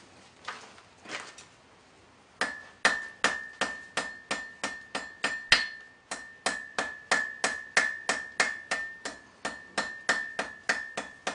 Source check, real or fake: real